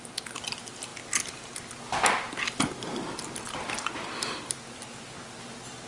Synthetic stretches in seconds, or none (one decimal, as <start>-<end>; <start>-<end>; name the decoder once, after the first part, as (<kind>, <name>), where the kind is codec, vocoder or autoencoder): none